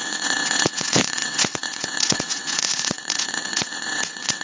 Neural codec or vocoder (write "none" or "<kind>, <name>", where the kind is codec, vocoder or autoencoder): vocoder, WaveNeXt